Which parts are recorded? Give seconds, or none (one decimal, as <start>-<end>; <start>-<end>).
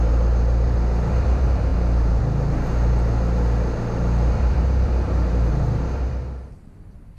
0.0-7.2